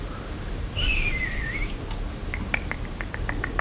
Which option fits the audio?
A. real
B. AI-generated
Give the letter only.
A